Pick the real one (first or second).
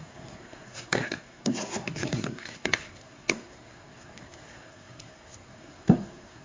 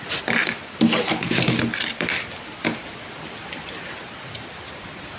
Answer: second